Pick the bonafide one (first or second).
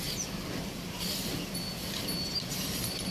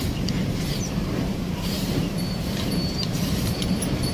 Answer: first